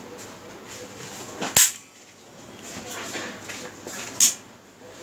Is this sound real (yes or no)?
yes